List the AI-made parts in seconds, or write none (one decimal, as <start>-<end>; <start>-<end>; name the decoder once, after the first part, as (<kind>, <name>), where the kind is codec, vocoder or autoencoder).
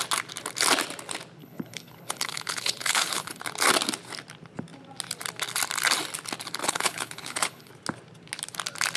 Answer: 1.4-3.4 (codec, HILCodec); 6.6-7.7